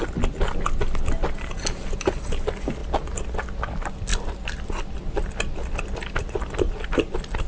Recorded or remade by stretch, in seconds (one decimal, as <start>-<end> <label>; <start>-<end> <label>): 0.0-7.5 recorded